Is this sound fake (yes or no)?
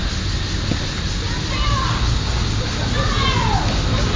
no